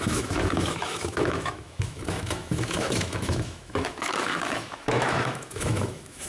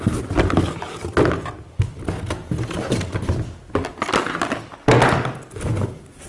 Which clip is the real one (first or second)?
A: second